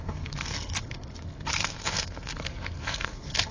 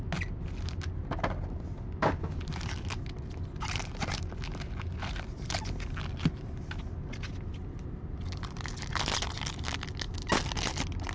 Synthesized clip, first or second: first